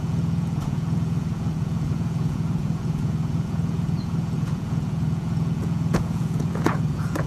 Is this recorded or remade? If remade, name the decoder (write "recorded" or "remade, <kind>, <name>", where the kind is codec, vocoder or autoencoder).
remade, vocoder, Vocos